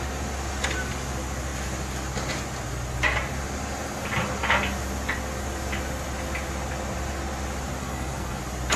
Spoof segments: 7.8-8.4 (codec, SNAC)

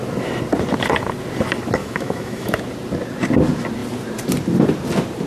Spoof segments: 1.8-2.6 (autoencoder, DAC-VAE)